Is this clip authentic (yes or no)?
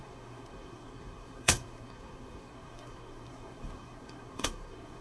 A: no